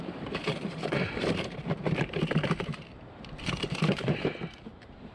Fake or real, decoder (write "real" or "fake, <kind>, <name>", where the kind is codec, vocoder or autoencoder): fake, vocoder, BigVGAN v2